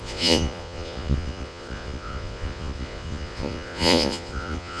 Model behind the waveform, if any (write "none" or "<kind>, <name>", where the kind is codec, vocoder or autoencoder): vocoder, Vocos